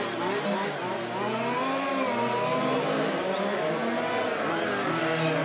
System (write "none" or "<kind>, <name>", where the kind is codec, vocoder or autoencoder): none